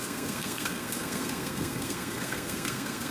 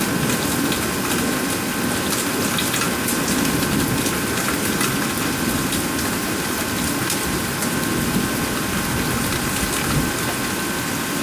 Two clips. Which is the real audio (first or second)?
second